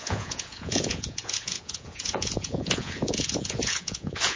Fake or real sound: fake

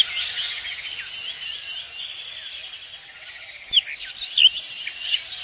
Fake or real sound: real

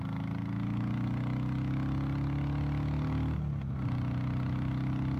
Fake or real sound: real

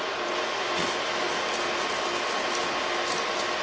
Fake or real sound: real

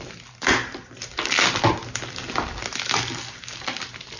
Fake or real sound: real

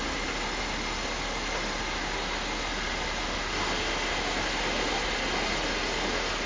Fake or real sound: real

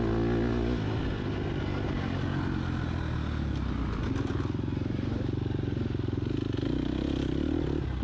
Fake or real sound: real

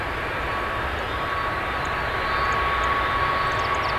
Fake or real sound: real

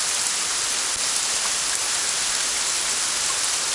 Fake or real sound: real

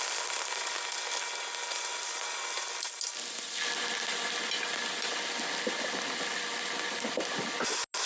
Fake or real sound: real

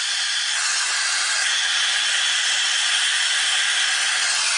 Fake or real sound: real